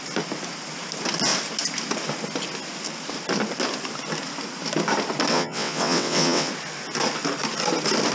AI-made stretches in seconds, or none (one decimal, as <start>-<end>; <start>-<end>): 5.3-6.5